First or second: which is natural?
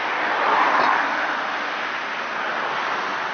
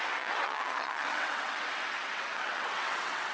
first